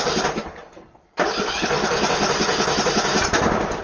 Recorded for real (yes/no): no